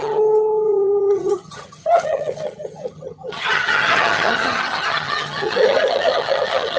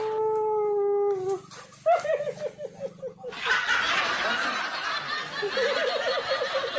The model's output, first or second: first